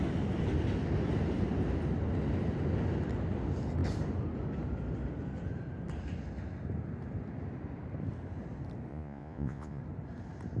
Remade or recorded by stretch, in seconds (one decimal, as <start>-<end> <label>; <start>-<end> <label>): 0.0-8.9 recorded; 8.9-9.8 remade; 9.8-10.6 recorded